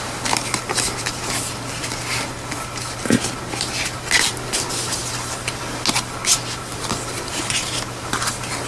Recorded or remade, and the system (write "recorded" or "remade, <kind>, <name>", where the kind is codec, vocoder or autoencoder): recorded